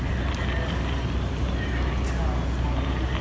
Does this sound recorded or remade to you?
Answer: recorded